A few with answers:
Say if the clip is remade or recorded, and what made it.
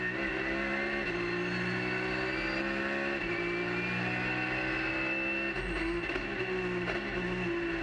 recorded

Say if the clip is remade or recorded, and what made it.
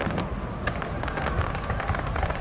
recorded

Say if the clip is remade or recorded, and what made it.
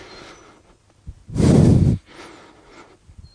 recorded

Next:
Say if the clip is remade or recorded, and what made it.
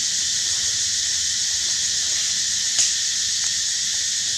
recorded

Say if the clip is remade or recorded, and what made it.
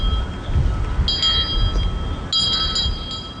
recorded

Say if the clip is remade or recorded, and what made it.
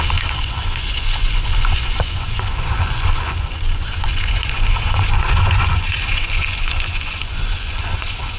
remade, vocoder, Vocos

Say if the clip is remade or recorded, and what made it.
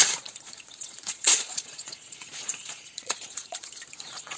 remade, vocoder, Vocos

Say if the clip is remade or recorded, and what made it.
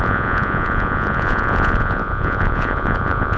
remade, vocoder, Vocos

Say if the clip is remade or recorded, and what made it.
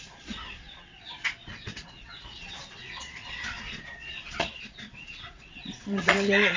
remade, vocoder, Vocos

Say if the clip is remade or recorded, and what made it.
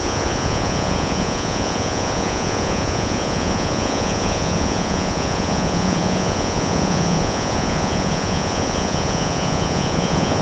remade, vocoder, Vocos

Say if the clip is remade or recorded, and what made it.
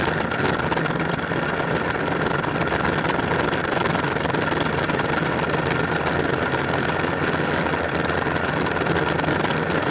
recorded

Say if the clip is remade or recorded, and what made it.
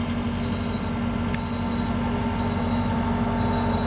recorded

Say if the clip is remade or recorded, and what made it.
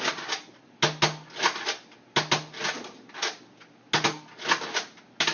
recorded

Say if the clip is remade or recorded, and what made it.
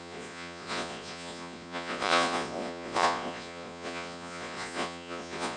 remade, vocoder, Vocos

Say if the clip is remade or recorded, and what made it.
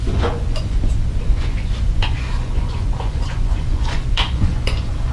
remade, vocoder, Vocos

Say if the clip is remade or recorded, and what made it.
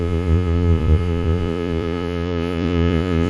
remade, vocoder, Vocos